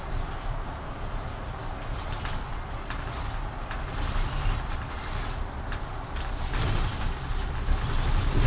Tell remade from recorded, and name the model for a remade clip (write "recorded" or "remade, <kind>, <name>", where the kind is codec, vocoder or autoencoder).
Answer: recorded